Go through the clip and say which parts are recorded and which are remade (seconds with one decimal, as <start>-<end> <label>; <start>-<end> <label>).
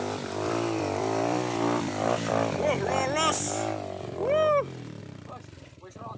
0.0-2.9 remade; 2.9-5.0 recorded; 5.0-6.2 remade